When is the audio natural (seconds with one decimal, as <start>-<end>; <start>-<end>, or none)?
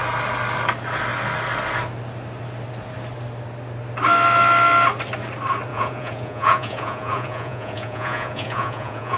0.0-5.7